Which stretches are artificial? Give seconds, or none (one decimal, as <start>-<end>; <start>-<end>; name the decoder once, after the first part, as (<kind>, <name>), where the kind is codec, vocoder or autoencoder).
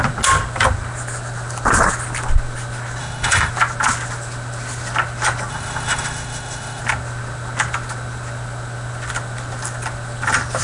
3.0-3.5 (autoencoder, DAC-VAE); 5.5-6.8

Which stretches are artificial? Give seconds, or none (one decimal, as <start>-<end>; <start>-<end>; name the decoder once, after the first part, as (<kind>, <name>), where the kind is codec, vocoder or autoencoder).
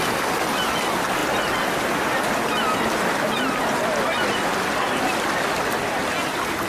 none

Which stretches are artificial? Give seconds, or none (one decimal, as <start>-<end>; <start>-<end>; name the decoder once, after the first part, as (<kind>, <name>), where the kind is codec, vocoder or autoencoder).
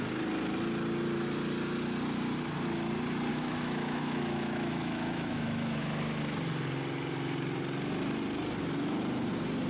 3.3-6.2 (autoencoder, DAC-VAE)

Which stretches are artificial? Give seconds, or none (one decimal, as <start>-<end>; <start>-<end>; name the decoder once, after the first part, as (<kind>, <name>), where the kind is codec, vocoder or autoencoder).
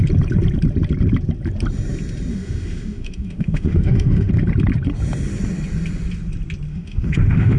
2.3-4.3 (autoencoder, DAC-VAE); 6.7-7.6